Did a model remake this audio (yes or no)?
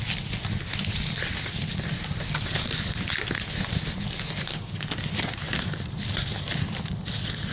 no